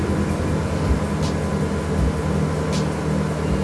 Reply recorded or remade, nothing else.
recorded